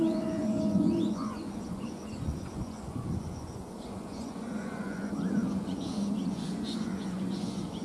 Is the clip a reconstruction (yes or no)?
yes